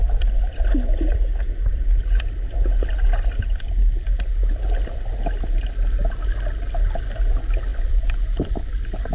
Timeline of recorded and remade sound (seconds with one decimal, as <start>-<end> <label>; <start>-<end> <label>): 0.0-7.7 recorded; 7.7-8.2 remade; 8.2-9.1 recorded